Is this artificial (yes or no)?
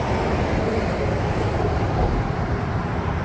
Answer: yes